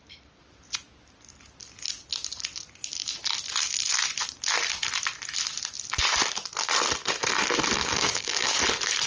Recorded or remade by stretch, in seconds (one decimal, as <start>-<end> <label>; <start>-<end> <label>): 0.0-7.8 recorded; 7.8-8.6 remade; 8.6-9.1 recorded